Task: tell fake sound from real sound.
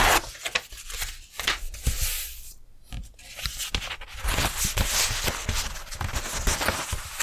real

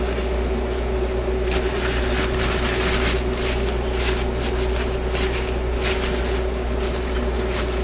real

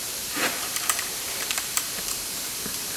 fake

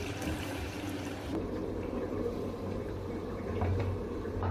fake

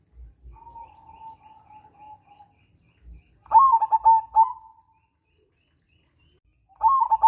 real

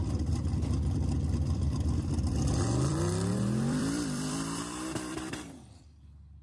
fake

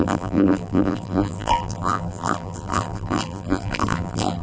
fake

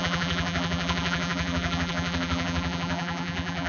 fake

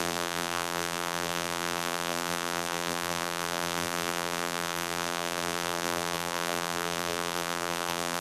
fake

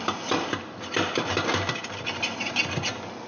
real